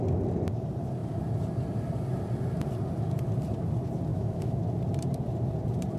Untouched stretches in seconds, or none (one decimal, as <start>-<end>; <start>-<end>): 0.0-4.1; 4.6-6.0